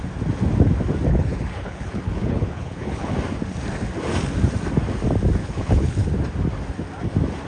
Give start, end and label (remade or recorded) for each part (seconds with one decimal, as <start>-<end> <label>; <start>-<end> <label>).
0.0-1.1 recorded; 1.1-3.1 remade; 3.1-5.4 recorded; 5.4-6.1 remade; 6.1-7.5 recorded